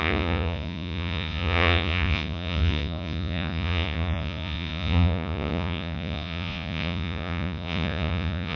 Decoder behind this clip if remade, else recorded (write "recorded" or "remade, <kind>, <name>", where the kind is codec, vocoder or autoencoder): remade, vocoder, Vocos